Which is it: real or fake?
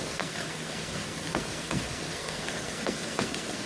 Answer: fake